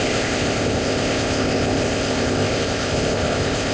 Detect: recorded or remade remade